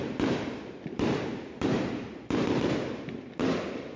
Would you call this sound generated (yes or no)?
yes